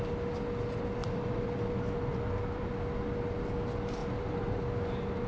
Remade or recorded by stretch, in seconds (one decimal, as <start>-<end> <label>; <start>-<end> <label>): 0.0-1.0 recorded; 1.0-2.7 remade; 2.7-4.0 recorded; 4.0-4.6 remade; 4.6-5.3 recorded